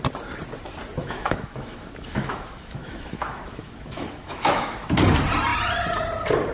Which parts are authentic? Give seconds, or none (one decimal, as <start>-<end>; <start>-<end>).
0.0-1.0; 4.9-6.5